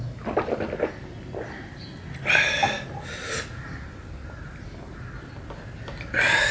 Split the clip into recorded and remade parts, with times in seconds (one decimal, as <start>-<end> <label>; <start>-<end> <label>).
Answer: 0.0-6.5 recorded